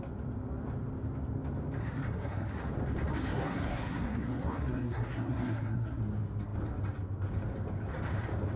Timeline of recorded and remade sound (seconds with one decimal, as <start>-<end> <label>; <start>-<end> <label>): 0.0-1.8 recorded; 1.8-2.7 remade; 2.7-3.3 recorded; 3.3-6.0 remade; 6.0-8.6 recorded